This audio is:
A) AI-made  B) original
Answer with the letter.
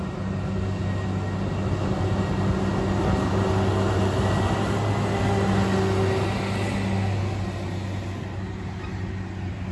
B